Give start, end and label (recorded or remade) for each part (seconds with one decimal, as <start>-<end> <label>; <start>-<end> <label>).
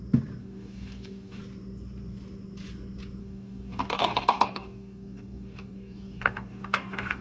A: 0.0-0.4 recorded; 0.4-1.4 remade; 1.4-3.2 recorded; 3.2-7.2 remade